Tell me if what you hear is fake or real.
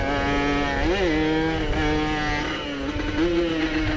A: real